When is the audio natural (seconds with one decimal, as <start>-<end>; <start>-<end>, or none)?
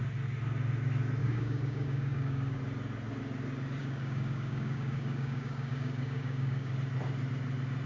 0.0-1.2; 2.6-3.8; 6.7-7.9